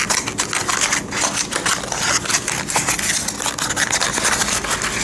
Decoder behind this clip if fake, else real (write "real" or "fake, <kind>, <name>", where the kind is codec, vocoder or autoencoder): real